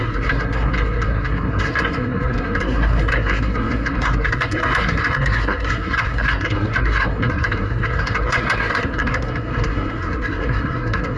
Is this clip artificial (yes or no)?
yes